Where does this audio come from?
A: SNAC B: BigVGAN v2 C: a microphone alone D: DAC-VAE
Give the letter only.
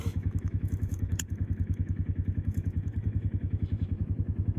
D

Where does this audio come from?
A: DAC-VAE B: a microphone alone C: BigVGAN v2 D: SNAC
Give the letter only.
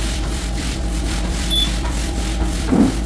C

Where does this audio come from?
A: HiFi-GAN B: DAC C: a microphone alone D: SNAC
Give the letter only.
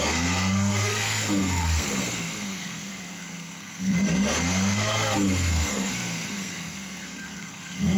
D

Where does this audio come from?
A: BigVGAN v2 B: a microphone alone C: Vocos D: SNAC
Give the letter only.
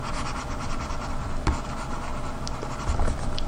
B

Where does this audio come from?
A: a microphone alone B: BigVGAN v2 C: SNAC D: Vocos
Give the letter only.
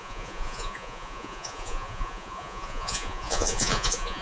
D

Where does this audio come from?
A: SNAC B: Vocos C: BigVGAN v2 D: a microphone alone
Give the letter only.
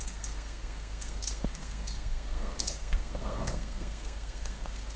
A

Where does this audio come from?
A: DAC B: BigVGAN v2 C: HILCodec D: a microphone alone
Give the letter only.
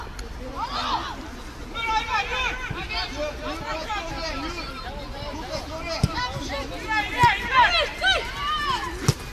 D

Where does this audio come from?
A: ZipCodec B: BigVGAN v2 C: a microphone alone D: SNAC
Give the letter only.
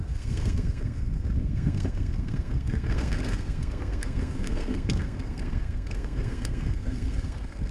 D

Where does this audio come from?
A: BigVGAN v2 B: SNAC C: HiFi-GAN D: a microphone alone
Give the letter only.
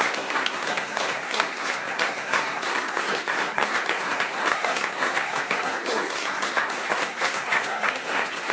B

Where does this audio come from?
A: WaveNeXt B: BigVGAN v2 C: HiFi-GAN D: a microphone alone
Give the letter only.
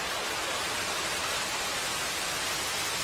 B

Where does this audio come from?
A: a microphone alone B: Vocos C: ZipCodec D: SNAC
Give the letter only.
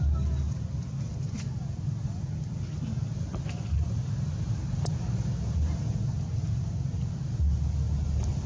A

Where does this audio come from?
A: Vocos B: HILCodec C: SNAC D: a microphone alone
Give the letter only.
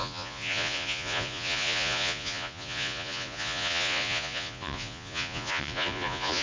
A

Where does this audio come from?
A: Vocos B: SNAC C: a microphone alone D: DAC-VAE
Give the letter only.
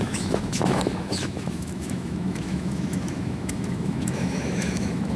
D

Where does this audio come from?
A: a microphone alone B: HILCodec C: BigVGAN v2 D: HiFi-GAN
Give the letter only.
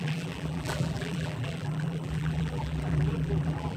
C